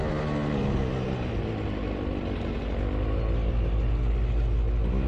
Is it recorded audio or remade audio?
recorded